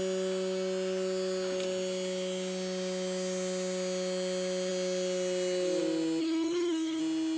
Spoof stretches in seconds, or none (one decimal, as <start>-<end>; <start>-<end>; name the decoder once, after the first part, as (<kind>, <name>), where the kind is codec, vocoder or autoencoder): 6.2-7.0 (codec, SNAC)